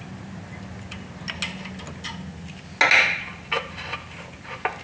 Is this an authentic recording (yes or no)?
yes